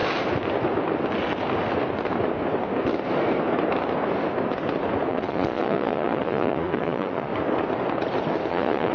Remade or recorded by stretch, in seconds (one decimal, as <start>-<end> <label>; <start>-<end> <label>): 0.0-5.1 recorded; 5.1-7.3 remade; 7.3-8.5 recorded; 8.5-8.9 remade